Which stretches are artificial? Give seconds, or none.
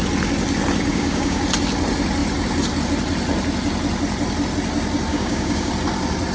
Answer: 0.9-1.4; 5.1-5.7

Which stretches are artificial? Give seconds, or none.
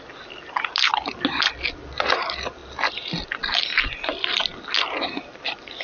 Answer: none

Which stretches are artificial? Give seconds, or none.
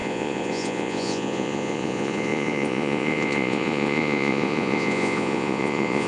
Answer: 0.0-6.1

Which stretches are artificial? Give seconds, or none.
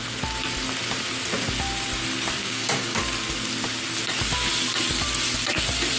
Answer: 2.4-3.0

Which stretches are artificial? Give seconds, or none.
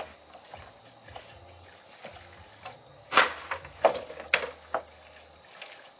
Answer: none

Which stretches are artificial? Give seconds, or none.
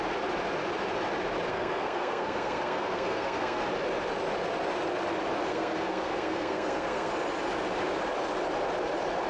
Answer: 1.5-3.6; 5.5-7.1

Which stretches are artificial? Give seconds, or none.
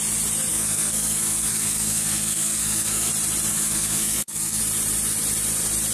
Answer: 0.5-3.1; 3.5-4.6